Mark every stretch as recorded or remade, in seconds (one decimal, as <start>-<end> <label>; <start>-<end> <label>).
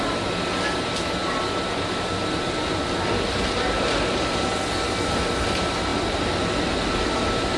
0.0-7.6 recorded